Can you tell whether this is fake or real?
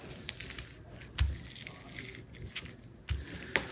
real